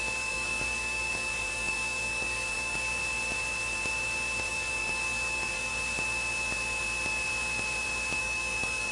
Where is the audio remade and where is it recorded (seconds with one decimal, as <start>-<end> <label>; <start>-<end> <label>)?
0.0-3.0 remade; 3.0-4.5 recorded; 4.5-5.7 remade; 5.7-8.2 recorded; 8.2-8.9 remade